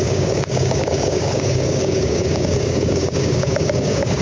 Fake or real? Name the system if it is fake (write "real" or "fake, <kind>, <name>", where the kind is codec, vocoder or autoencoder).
fake, codec, DAC